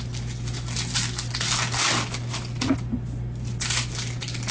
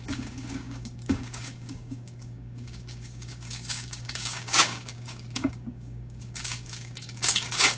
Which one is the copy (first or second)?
second